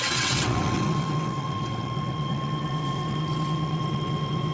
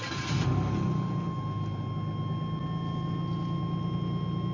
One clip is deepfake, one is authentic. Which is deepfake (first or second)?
first